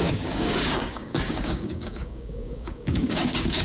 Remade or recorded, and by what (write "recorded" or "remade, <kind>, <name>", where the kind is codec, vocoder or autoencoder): remade, codec, DAC